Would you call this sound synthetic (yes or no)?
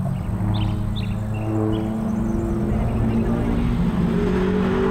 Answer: no